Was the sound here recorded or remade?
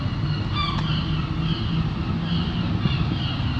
recorded